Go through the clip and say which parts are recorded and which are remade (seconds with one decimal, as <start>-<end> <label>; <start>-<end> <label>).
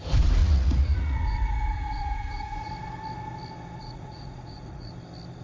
0.0-0.4 recorded; 0.4-2.7 remade; 2.7-3.8 recorded; 3.8-4.9 remade; 4.9-5.4 recorded